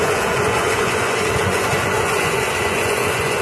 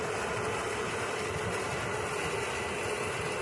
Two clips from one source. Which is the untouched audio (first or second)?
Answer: second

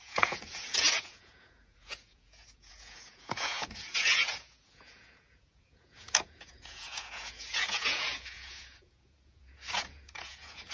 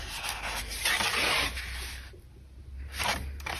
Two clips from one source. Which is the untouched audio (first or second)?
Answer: second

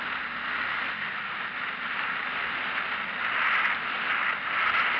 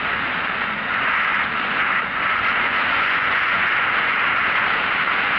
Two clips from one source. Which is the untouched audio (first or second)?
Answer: first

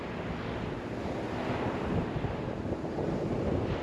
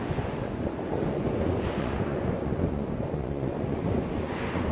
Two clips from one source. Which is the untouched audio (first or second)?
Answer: first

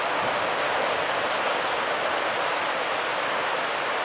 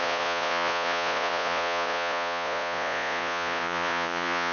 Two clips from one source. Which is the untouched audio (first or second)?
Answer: first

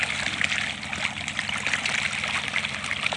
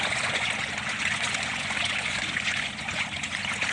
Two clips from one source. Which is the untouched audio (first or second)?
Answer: first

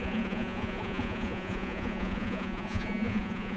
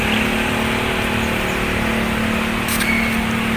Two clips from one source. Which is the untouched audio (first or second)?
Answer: second